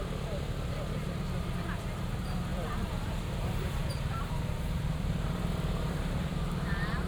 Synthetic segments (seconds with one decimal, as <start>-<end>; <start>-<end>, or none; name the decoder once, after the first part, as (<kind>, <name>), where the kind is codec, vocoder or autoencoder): 0.0-7.1 (vocoder, BigVGAN v2)